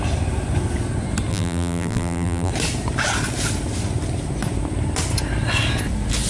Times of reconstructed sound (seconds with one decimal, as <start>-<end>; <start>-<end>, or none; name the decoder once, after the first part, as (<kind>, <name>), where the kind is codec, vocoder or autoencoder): 1.3-2.5 (vocoder, BigVGAN v2)